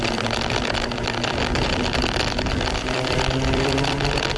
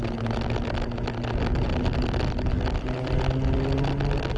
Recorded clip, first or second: second